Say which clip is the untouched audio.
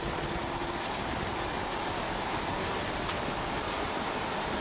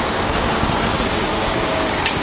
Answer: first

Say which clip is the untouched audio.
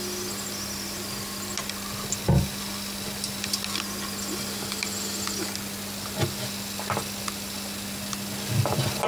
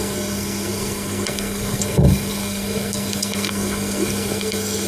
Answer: first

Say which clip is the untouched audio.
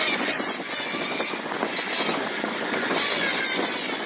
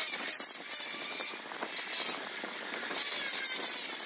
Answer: second